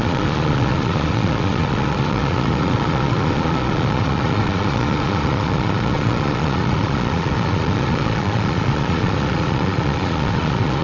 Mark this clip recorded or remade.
remade